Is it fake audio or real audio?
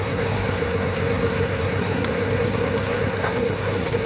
fake